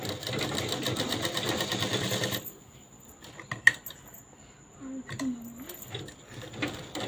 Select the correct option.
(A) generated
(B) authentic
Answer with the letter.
B